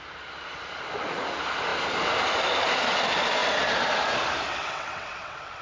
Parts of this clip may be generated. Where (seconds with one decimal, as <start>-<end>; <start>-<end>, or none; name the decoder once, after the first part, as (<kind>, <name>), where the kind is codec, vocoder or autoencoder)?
4.5-5.6 (vocoder, WaveNeXt)